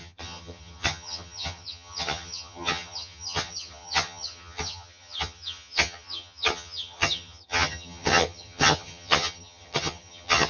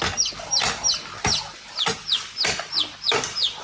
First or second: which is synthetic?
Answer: first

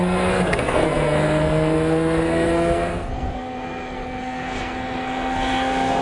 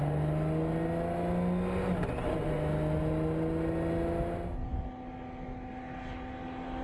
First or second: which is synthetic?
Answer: first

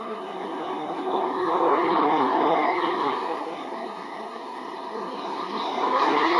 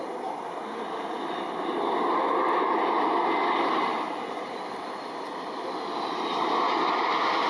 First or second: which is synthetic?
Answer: first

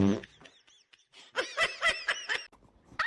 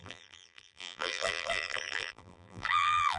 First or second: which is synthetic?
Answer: second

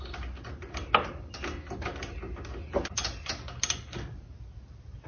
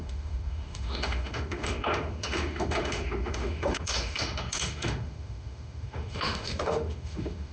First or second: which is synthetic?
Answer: second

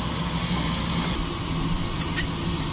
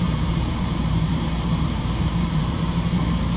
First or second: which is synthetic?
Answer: second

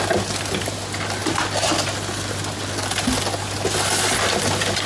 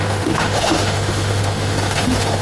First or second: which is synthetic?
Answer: second